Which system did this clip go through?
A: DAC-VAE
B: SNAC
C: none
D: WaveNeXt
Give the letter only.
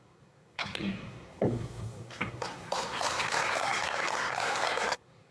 B